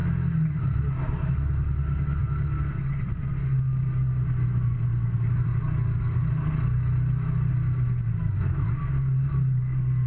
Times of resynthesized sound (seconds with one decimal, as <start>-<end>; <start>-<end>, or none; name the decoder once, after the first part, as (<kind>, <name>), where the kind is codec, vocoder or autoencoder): 8.2-8.7 (autoencoder, DAC-VAE)